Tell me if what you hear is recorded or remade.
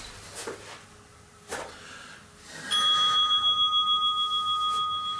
recorded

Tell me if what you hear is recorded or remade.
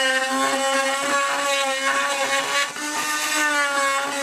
recorded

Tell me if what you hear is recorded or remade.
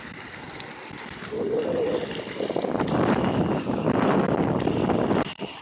remade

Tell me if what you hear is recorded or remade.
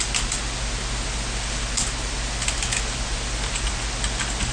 recorded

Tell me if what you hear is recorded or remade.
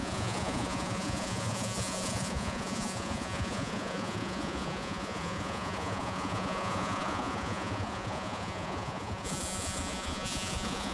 remade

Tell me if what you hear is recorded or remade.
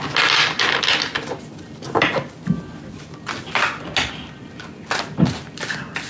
recorded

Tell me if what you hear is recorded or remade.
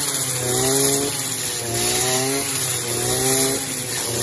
recorded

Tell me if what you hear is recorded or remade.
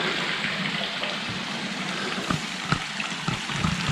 recorded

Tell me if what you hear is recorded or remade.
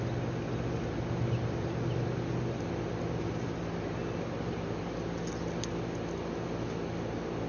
recorded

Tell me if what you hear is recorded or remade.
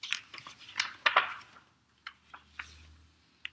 recorded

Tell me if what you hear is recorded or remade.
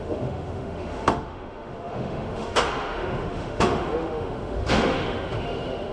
remade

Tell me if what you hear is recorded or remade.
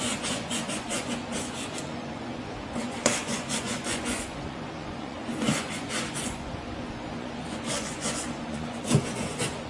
remade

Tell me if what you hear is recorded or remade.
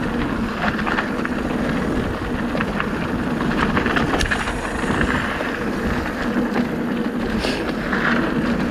recorded